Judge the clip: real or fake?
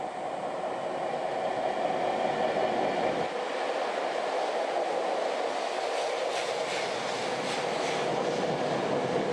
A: real